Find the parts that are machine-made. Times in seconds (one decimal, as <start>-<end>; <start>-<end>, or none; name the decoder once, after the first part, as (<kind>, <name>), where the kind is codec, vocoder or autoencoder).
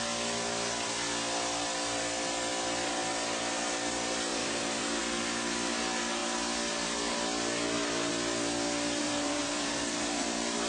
4.3-5.0 (vocoder, BigVGAN v2); 9.0-10.7